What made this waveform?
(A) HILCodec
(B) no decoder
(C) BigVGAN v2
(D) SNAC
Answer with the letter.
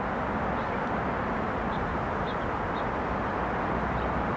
B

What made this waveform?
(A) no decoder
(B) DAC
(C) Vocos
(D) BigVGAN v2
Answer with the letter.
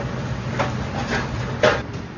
A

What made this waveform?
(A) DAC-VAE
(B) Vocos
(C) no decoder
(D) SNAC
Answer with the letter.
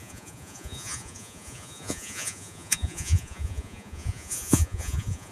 B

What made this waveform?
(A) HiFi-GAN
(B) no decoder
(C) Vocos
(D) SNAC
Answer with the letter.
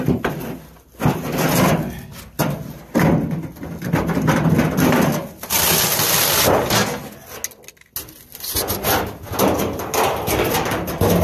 B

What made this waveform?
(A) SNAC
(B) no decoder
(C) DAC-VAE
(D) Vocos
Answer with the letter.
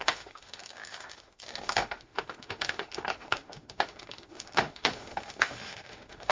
C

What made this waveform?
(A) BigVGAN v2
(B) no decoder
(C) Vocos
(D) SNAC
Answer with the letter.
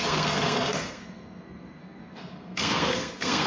D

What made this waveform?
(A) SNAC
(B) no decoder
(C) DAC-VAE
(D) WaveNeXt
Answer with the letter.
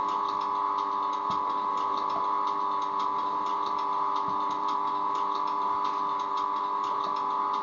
B